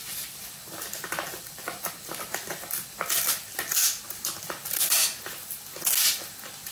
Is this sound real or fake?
real